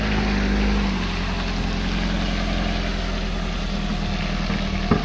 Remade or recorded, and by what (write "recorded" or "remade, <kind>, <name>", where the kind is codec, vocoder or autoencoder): recorded